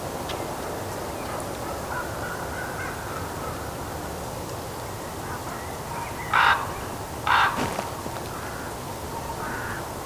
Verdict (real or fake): real